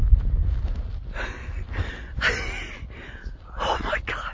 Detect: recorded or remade recorded